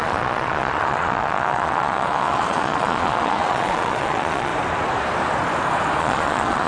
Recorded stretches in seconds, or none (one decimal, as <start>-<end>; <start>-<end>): 4.5-6.0